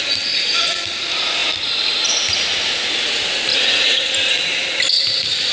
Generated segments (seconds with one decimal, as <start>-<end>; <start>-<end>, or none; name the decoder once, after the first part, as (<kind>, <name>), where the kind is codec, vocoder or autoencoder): 3.5-4.1 (vocoder, Vocos)